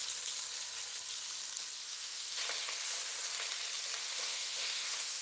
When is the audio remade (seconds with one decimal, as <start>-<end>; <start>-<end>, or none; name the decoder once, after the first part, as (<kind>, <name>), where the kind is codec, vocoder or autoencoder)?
1.9-2.4 (autoencoder, DAC-VAE); 4.0-5.2